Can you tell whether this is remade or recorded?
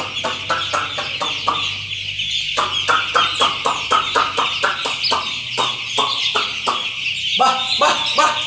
recorded